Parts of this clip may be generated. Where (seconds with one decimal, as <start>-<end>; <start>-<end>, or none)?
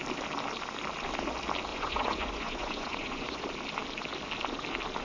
1.7-3.4